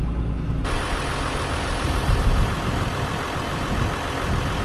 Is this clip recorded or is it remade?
recorded